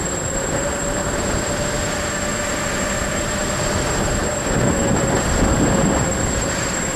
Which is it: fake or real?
real